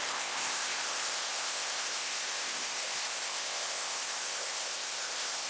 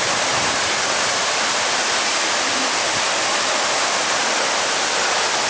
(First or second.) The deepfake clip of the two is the first